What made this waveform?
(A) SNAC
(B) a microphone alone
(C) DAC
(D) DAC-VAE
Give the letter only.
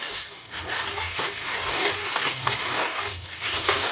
C